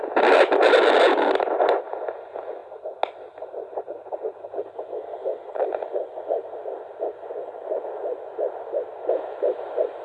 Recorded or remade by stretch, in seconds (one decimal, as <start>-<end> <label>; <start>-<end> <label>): 0.0-10.0 recorded